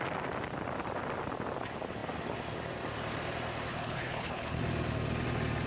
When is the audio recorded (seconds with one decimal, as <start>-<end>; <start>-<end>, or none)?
0.0-3.7; 4.6-5.7